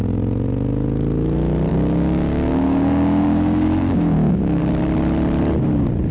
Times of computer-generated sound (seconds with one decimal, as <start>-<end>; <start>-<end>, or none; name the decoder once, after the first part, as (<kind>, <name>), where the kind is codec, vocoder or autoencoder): 1.7-4.6 (codec, DAC)